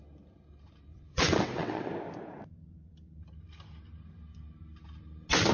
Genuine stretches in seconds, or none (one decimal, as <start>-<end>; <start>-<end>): 0.0-0.9; 1.9-5.5